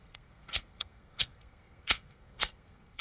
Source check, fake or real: fake